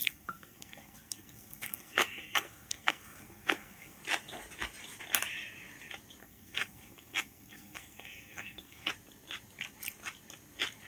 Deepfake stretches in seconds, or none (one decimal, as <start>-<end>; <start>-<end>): 0.0-4.0; 6.2-8.9